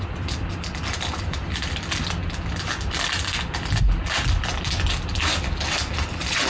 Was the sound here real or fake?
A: real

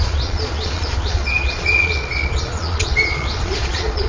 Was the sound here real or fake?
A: fake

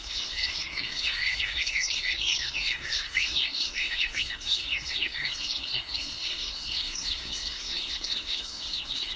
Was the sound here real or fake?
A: fake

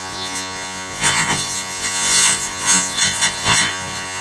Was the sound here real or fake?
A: fake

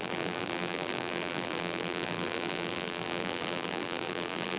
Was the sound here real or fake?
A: fake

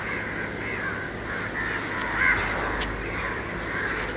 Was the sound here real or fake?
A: real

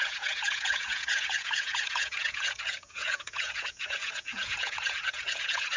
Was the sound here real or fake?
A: fake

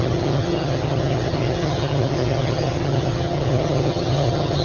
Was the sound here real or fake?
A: fake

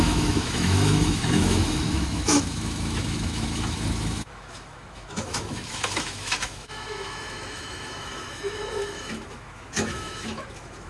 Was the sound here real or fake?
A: fake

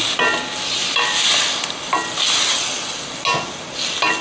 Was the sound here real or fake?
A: real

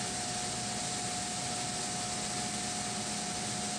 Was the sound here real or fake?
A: real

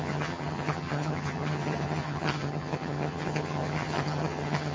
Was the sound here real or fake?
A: fake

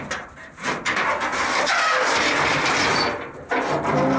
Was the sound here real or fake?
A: real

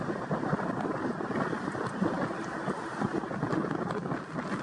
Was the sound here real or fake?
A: real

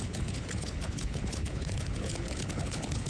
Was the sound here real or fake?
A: fake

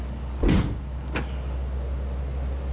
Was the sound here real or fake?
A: real